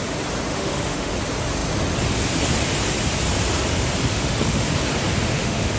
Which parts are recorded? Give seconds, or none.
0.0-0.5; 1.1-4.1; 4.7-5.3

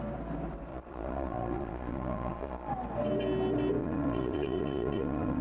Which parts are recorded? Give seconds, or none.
0.0-0.7; 2.7-3.8

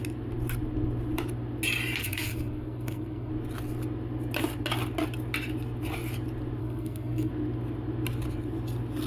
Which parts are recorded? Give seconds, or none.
0.0-2.0; 3.3-6.6; 7.3-9.1